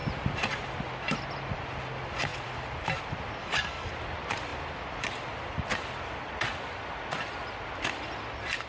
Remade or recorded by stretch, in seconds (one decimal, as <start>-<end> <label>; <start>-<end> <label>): 0.0-3.4 recorded; 3.4-3.9 remade; 3.9-8.7 recorded

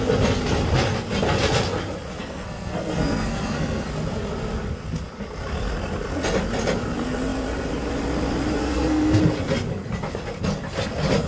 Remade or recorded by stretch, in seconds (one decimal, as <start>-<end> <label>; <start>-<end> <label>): 0.0-2.2 recorded; 2.2-3.9 remade; 3.9-8.6 recorded; 8.6-9.2 remade; 9.2-11.3 recorded

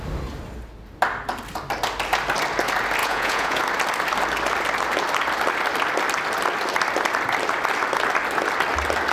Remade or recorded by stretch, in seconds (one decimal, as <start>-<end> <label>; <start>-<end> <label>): 0.0-3.0 recorded; 3.0-3.6 remade; 3.6-9.1 recorded

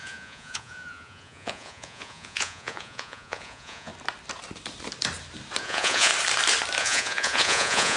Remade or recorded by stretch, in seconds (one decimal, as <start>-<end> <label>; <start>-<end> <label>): 0.0-3.9 remade; 3.9-5.6 recorded; 5.6-6.1 remade; 6.1-6.8 recorded; 6.8-8.0 remade

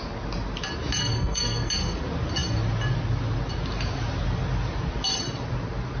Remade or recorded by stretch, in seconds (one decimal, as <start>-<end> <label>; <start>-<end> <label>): 0.0-1.0 recorded; 1.0-1.7 remade; 1.7-6.0 recorded

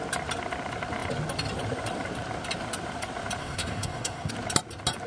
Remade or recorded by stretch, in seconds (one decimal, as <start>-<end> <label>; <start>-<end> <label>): 0.0-3.4 recorded; 3.4-4.3 remade; 4.3-5.1 recorded

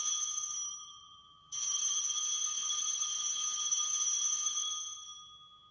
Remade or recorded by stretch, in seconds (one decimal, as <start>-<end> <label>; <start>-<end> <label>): 0.0-1.9 remade; 1.9-2.6 recorded; 2.6-4.7 remade; 4.7-5.7 recorded